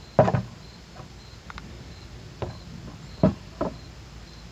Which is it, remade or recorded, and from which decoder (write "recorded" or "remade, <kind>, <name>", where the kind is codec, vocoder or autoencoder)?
recorded